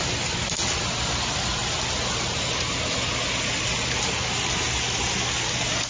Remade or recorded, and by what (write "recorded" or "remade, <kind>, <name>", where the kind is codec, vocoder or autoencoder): recorded